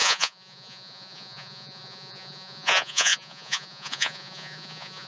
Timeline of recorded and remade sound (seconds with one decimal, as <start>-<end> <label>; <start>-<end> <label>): 0.0-5.1 remade

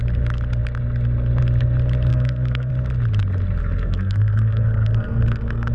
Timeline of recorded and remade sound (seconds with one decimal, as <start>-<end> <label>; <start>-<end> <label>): 0.0-2.1 recorded; 2.1-2.7 remade; 2.7-3.6 recorded; 3.6-5.7 remade

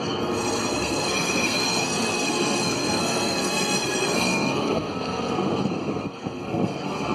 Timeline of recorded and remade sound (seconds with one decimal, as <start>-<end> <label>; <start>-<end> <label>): 0.0-7.1 remade